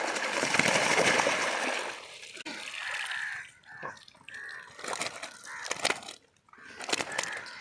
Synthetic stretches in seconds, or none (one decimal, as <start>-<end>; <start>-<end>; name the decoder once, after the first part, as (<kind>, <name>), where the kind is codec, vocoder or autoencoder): none